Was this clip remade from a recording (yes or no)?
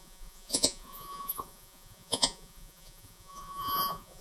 yes